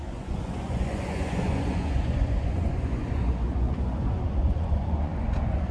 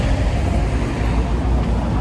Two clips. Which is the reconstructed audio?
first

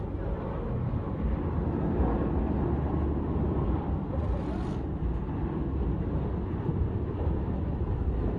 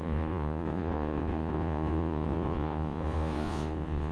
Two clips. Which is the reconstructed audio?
second